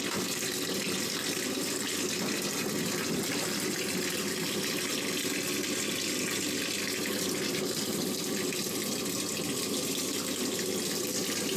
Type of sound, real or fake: real